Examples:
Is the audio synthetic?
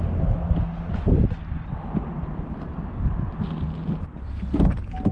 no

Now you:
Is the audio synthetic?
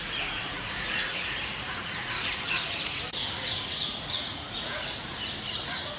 yes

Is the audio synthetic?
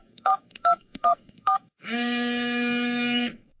yes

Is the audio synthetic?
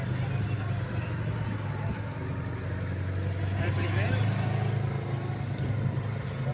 no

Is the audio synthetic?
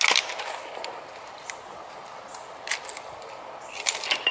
no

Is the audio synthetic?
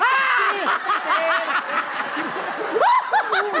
no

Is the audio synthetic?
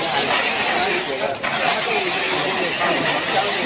no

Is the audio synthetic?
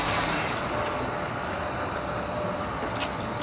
no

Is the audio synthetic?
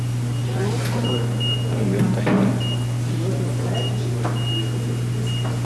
no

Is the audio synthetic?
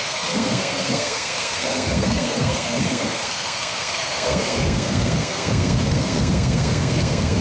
yes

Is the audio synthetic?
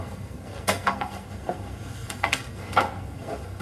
yes